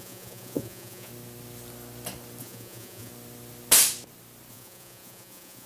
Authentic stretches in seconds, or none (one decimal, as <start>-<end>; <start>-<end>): 1.1-2.4; 3.1-4.5